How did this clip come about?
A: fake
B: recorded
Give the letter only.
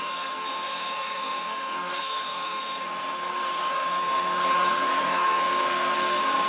A